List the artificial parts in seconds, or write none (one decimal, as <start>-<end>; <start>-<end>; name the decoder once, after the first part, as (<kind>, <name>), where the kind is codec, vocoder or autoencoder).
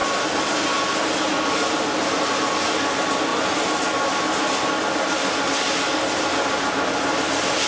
none